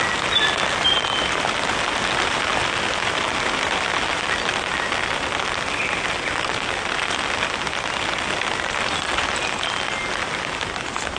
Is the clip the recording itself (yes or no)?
yes